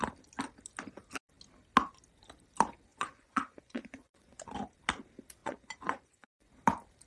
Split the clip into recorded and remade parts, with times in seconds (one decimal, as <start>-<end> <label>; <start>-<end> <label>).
0.0-2.9 recorded; 2.9-4.5 remade; 4.5-5.4 recorded; 5.4-6.5 remade; 6.5-7.1 recorded